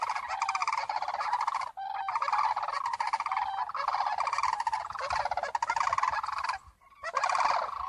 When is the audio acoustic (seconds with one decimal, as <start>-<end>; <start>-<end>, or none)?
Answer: 0.0-7.9